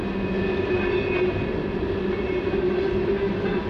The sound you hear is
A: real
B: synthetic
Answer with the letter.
A